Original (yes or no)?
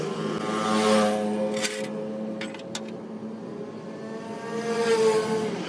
yes